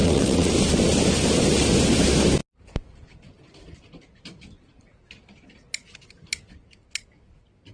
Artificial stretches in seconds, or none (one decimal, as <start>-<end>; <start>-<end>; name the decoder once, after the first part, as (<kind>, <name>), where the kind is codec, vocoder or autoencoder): 0.0-0.5 (vocoder, WaveNeXt)